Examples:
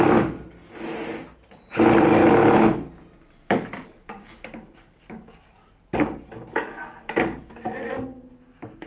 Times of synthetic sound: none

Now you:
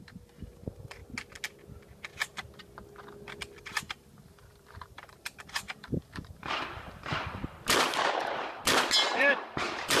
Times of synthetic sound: 0.0-1.0; 3.6-7.4; 8.2-8.6; 9.1-10.0

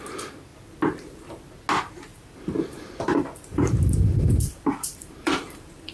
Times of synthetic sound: 2.1-5.9

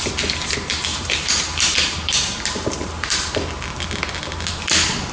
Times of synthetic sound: 0.9-3.3